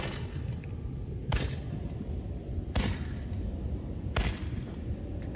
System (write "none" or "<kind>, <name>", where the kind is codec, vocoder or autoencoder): none